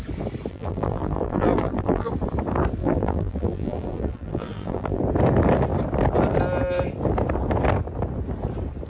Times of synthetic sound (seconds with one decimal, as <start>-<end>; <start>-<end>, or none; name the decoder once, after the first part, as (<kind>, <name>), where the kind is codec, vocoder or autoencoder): 0.5-2.1 (vocoder, BigVGAN v2); 2.8-5.0